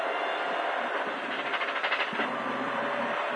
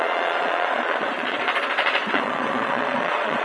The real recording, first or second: first